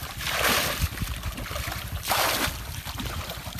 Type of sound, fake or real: fake